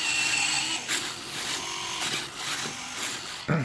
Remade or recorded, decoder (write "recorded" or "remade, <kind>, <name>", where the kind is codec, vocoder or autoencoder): recorded